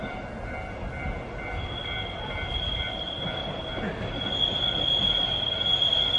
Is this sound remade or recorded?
recorded